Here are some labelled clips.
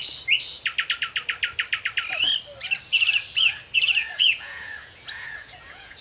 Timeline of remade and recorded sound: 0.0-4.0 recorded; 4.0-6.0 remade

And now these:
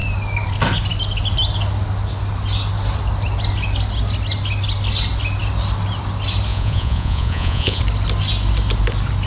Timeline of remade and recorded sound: 0.0-6.5 recorded; 6.5-7.8 remade; 7.8-9.3 recorded

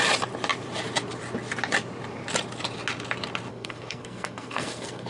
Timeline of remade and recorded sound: 0.0-3.5 recorded; 3.5-5.1 remade

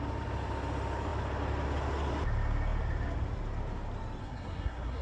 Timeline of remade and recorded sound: 0.0-4.2 recorded; 4.2-5.0 remade

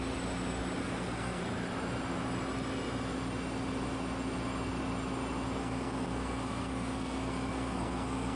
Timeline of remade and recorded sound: 0.0-0.8 recorded; 0.8-1.4 remade; 1.4-5.6 recorded; 5.6-8.4 remade

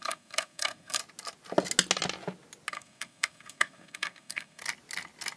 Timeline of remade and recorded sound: 0.0-1.0 remade; 1.0-2.7 recorded; 2.7-4.6 remade; 4.6-5.4 recorded

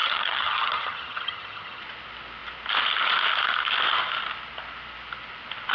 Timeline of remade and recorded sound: 0.0-1.8 remade; 1.8-5.7 recorded

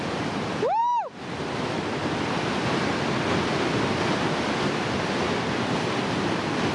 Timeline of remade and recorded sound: 0.0-6.7 recorded